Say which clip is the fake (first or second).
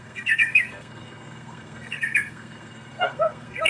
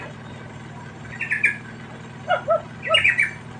first